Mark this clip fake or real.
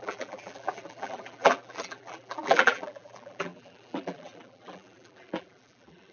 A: fake